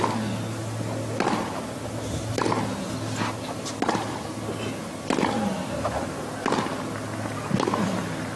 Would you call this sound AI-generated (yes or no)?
no